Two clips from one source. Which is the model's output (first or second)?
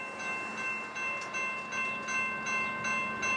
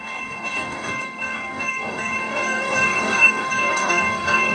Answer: second